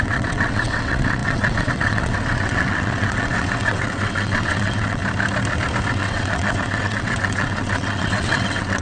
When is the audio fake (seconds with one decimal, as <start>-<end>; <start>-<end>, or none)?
0.0-5.0; 5.9-8.8